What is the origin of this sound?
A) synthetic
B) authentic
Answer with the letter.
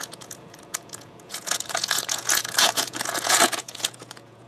A